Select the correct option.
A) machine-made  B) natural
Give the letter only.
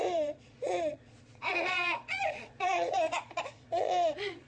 A